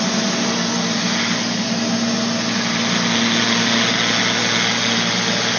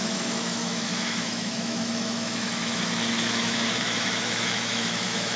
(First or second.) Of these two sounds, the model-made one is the second